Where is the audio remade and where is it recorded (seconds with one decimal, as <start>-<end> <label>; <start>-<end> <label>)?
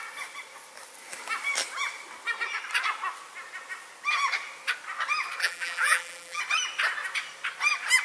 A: 0.0-5.4 recorded; 5.4-6.4 remade; 6.4-8.0 recorded